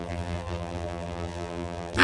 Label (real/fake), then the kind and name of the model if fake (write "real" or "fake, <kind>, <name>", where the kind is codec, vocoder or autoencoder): fake, vocoder, BigVGAN v2